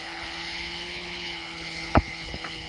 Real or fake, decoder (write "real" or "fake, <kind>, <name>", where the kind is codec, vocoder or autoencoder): fake, codec, HILCodec